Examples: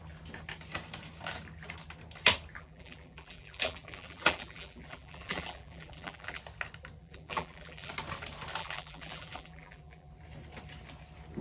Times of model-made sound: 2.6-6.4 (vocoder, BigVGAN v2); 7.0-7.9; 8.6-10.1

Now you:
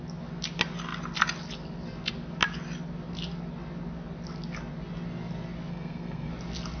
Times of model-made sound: 5.7-6.3 (codec, SNAC)

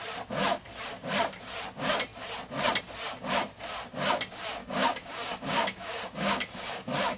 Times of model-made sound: 4.6-7.2 (codec, DAC)